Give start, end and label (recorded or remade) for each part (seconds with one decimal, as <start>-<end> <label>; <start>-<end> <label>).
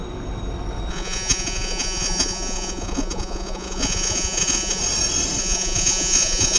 0.0-0.9 recorded; 0.9-4.8 remade; 4.8-5.4 recorded; 5.4-6.6 remade